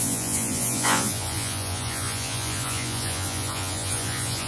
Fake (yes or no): yes